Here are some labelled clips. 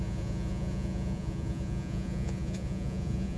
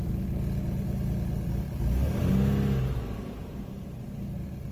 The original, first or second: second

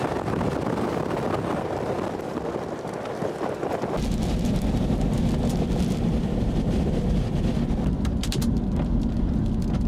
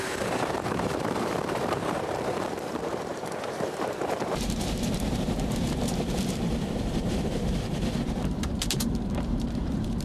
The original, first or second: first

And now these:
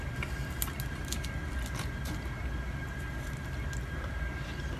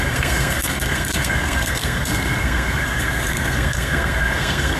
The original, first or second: first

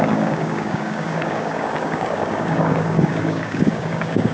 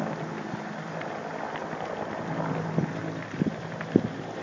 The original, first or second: second